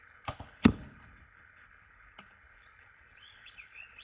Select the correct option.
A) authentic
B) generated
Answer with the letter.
B